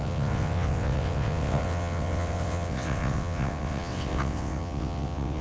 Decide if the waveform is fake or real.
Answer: fake